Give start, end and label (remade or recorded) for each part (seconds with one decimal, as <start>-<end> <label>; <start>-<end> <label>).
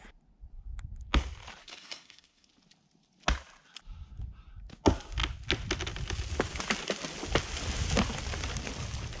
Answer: 0.0-1.6 recorded; 1.6-2.5 remade; 2.5-9.2 recorded